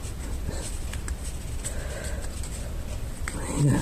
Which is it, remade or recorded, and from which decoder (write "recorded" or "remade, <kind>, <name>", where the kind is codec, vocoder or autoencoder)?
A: recorded